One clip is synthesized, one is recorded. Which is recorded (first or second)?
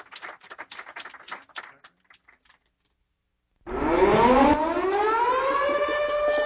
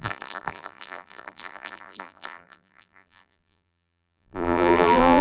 first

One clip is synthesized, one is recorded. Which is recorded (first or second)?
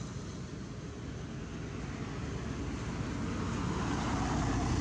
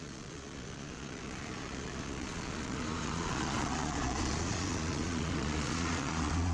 first